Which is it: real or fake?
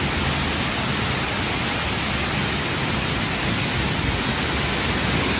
real